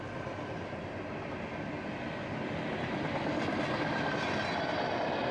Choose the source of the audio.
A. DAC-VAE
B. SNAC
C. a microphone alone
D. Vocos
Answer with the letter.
C